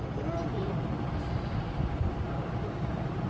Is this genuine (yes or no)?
yes